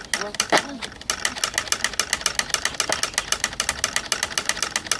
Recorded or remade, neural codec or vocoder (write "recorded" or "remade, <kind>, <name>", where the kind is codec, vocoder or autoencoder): recorded